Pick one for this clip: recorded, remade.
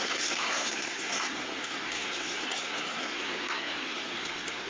remade